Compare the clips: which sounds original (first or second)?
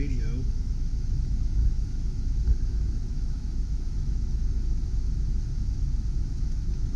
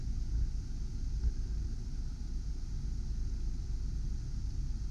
second